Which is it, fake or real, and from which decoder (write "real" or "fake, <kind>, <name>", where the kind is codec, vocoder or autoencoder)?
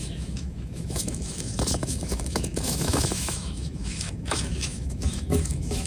fake, autoencoder, DAC-VAE